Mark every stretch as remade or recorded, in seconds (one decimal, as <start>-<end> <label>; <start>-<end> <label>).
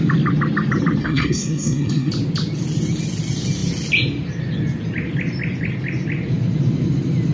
0.0-1.0 recorded; 1.0-2.1 remade; 2.1-7.3 recorded